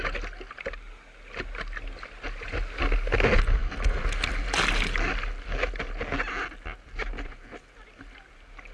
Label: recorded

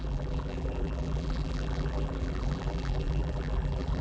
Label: remade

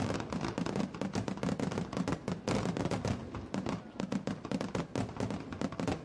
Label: recorded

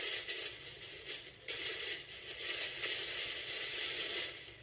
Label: recorded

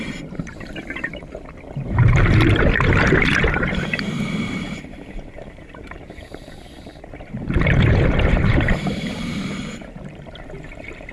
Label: remade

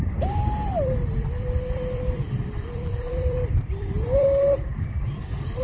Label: remade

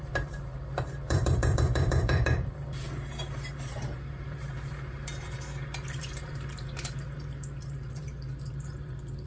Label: remade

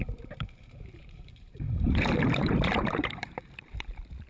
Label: remade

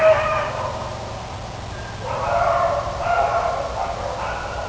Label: recorded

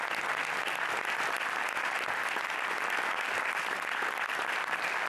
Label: recorded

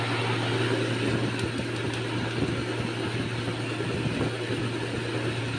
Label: recorded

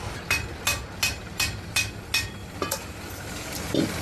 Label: recorded